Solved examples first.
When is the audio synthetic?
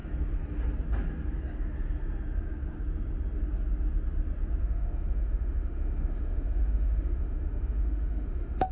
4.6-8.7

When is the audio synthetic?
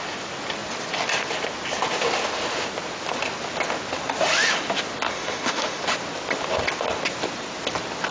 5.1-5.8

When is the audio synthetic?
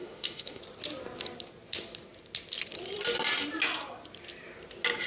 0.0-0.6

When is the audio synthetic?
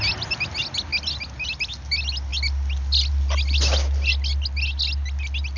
none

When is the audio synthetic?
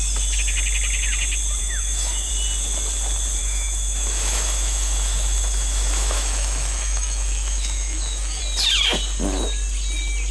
1.6-2.3; 3.4-8.4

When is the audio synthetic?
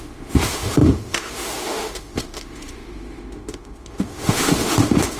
0.0-5.2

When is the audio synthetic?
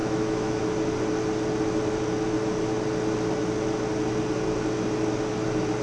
0.0-0.6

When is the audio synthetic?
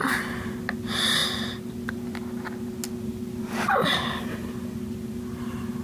none